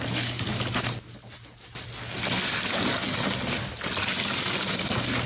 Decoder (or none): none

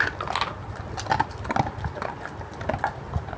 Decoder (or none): none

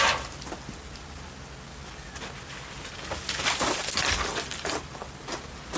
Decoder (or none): none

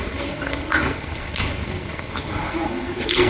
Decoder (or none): codec, SNAC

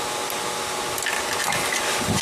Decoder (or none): none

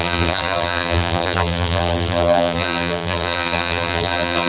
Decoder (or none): vocoder, BigVGAN v2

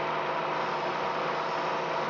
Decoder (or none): none